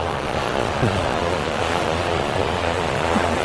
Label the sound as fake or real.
fake